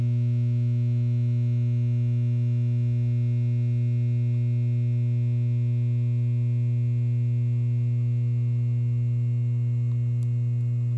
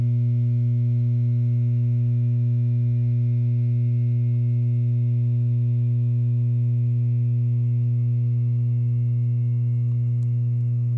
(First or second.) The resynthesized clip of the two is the second